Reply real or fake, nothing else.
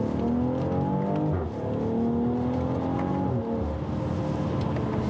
real